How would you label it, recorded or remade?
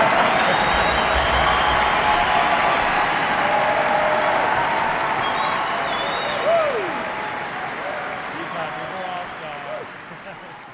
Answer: recorded